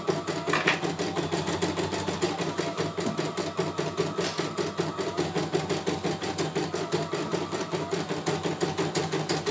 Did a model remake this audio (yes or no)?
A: no